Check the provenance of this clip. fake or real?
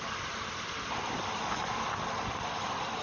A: real